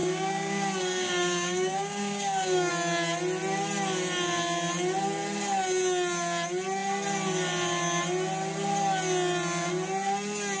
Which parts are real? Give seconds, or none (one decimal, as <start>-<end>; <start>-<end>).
2.7-10.6